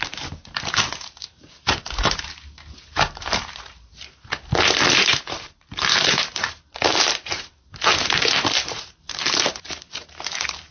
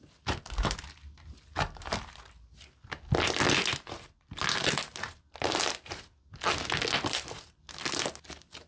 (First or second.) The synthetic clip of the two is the first